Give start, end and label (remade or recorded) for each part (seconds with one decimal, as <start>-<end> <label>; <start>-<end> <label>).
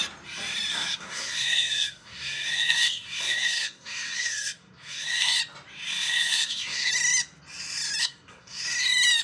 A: 0.0-0.7 recorded; 0.7-5.4 remade; 5.4-5.9 recorded; 5.9-6.9 remade; 6.9-8.0 recorded; 8.0-8.6 remade; 8.6-9.2 recorded